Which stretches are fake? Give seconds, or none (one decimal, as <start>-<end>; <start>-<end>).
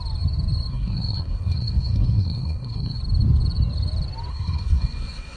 0.7-3.0; 4.3-5.4